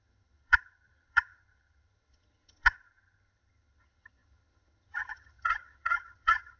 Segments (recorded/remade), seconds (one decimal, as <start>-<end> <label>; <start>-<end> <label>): 0.0-6.6 remade